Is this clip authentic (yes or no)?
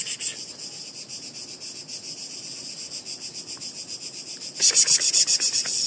yes